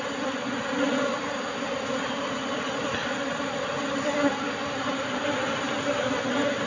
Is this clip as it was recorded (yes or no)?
yes